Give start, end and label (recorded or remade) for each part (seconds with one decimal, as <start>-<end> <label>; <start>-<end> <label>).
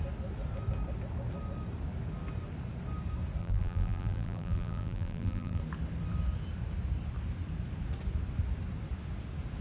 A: 0.0-3.4 recorded; 3.4-5.6 remade; 5.6-9.6 recorded